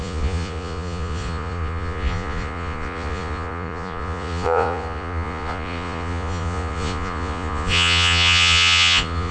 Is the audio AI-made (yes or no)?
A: yes